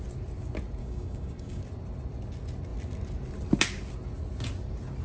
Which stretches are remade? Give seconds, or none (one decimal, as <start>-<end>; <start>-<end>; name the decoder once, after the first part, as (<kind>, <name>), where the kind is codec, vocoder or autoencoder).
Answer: 0.8-1.6 (codec, DAC)